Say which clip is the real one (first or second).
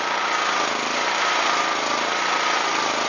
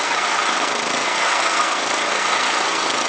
first